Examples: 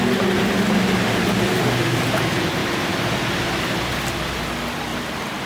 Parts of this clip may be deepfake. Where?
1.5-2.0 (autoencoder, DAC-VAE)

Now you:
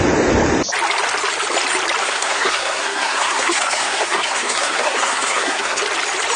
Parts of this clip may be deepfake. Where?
2.0-5.8 (codec, SNAC)

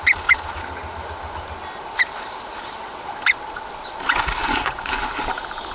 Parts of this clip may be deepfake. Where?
4.4-5.1 (vocoder, Vocos)